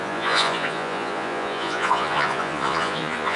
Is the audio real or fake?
fake